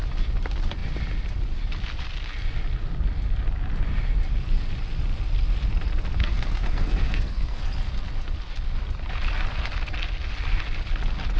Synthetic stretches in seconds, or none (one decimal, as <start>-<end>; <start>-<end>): 6.2-7.6

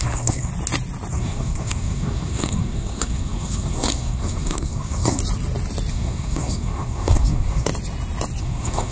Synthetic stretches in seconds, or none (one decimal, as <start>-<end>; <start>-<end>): 0.0-0.5; 1.1-5.2; 5.9-7.7; 8.4-8.9

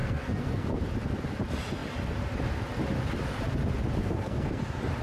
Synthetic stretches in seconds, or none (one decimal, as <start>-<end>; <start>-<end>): 0.0-0.8; 4.0-4.6

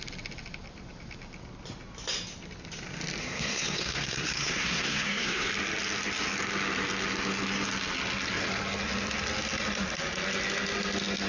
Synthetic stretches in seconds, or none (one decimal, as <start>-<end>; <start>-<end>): 3.2-5.5

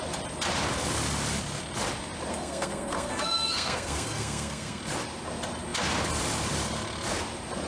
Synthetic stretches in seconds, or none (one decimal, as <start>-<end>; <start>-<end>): 2.3-4.8